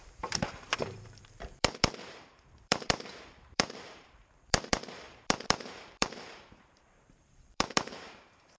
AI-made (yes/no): yes